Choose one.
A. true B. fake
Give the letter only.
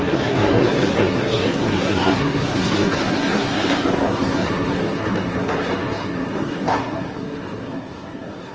B